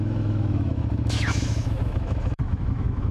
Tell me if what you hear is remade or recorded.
remade